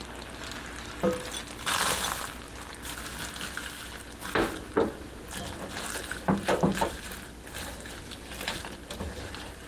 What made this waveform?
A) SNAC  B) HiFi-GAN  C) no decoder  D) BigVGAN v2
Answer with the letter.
C